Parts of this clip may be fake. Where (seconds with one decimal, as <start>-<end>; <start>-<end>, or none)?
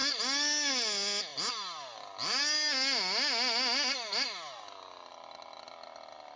none